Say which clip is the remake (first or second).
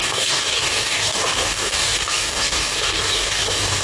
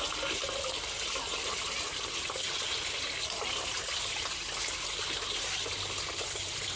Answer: first